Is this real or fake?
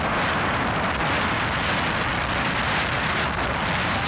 real